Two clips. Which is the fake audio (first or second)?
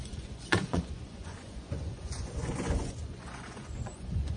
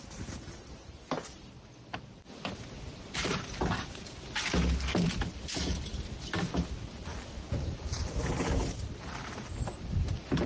first